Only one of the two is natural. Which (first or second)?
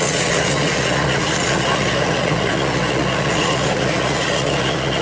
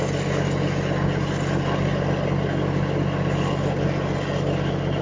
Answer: second